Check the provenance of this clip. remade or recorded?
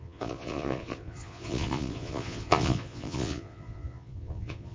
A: remade